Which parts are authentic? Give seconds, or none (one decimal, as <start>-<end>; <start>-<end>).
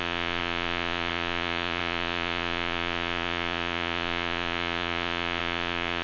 none